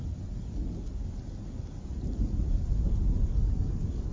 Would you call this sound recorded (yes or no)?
yes